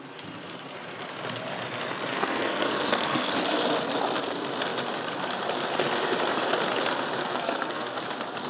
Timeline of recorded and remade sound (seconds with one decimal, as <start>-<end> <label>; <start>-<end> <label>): 0.0-2.1 recorded; 2.1-3.3 remade; 3.3-7.2 recorded; 7.2-8.0 remade; 8.0-8.5 recorded